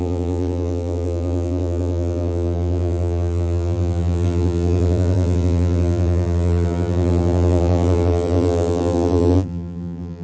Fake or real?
fake